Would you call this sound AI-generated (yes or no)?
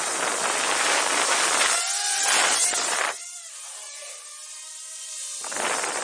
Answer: no